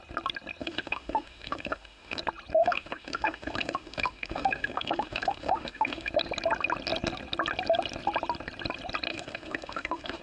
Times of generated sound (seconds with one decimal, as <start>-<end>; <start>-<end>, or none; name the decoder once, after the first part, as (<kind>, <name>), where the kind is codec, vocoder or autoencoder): 0.6-2.2 (autoencoder, DAC-VAE); 2.6-6.1; 9.1-10.2